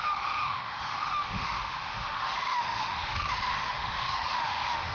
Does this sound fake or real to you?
fake